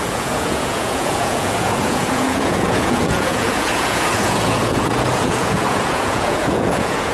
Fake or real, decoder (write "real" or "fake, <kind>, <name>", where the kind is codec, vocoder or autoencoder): fake, vocoder, Vocos